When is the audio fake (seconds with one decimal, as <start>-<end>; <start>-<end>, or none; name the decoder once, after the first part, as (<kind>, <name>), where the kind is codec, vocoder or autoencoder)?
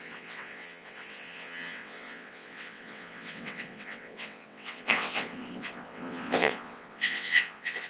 0.0-7.9 (vocoder, WaveNeXt)